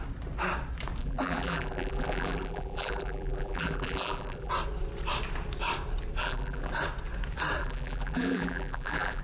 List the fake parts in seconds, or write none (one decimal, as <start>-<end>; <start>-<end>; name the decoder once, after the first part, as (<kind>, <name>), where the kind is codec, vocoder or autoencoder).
1.0-4.5 (vocoder, BigVGAN v2); 6.2-6.7; 7.6-9.2